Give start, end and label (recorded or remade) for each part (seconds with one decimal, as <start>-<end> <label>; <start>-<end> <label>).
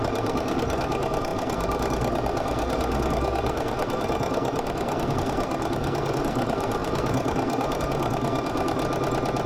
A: 0.0-8.8 remade; 8.8-9.5 recorded